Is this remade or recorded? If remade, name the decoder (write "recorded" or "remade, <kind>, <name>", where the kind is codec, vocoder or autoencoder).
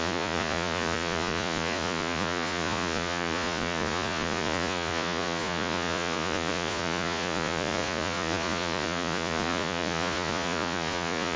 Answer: remade, vocoder, Vocos